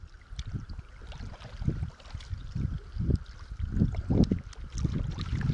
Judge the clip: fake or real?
real